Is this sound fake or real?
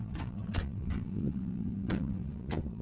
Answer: fake